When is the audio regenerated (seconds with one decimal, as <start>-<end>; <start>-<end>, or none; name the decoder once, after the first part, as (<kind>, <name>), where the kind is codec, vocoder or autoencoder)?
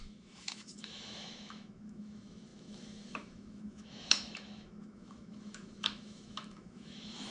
0.0-7.3 (autoencoder, DAC-VAE)